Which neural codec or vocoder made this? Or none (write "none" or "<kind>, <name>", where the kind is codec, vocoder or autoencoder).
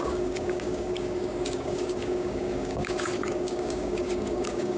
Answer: codec, DAC